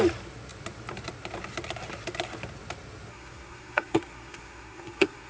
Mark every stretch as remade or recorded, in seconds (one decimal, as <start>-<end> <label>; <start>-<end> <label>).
0.0-3.1 recorded; 3.1-5.3 remade